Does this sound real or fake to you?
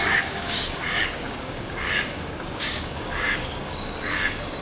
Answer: fake